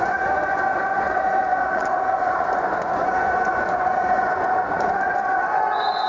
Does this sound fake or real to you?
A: fake